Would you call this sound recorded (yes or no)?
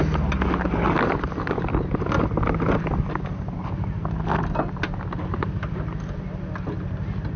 yes